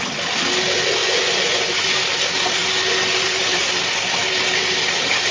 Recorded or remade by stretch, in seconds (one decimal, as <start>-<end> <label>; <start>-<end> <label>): 0.0-1.0 recorded; 1.0-2.0 remade; 2.0-2.6 recorded; 2.6-3.4 remade; 3.4-5.3 recorded